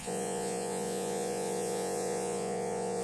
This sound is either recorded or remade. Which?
remade